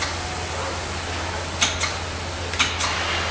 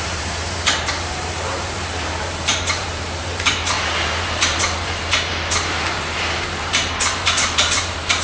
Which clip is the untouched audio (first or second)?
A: first